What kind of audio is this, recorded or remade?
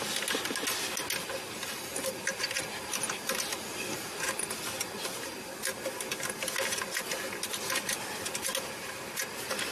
recorded